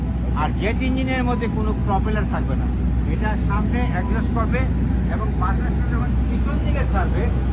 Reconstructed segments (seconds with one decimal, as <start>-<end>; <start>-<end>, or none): none